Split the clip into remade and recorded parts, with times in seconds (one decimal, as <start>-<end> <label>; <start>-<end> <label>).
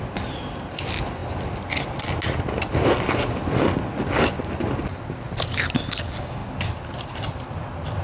0.0-8.0 recorded